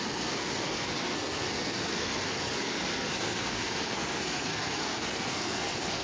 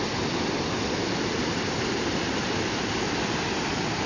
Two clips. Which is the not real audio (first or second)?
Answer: first